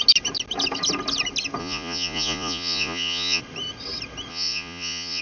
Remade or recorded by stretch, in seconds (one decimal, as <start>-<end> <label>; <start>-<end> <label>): 0.0-1.6 recorded; 1.6-3.4 remade; 3.4-4.3 recorded; 4.3-5.2 remade